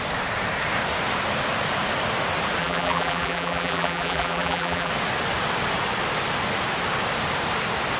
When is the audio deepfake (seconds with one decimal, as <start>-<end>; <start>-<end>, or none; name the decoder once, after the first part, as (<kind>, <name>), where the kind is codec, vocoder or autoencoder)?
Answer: 2.6-4.9 (vocoder, BigVGAN v2)